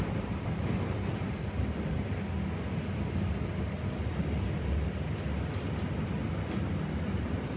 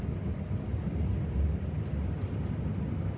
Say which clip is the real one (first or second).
first